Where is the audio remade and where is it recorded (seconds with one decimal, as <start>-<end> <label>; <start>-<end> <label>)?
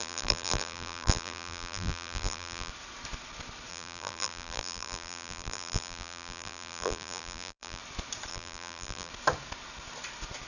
0.0-2.7 remade; 2.7-3.7 recorded; 3.7-7.8 remade; 7.8-8.3 recorded; 8.3-9.1 remade; 9.1-10.5 recorded